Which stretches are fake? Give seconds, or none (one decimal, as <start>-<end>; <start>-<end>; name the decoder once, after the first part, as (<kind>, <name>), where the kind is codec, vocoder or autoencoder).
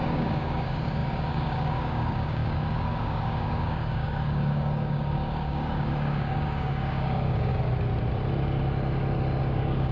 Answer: 0.0-7.5 (codec, DAC); 9.4-9.9